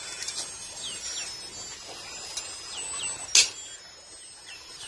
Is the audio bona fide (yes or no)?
yes